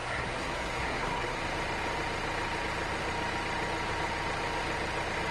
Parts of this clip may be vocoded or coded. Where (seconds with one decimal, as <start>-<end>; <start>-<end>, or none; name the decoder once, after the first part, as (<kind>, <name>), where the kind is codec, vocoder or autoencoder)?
0.0-1.4 (codec, SNAC)